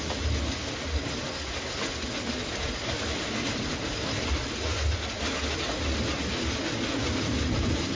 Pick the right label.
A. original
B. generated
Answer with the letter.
A